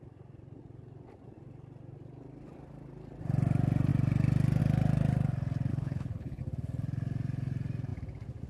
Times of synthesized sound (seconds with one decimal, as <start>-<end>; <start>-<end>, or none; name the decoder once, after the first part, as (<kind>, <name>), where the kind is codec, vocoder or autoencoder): 5.7-6.4 (codec, HILCodec)